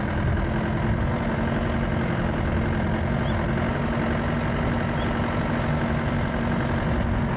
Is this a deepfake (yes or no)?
no